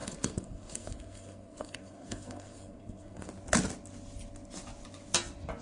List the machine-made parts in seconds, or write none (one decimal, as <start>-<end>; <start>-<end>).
0.0-3.3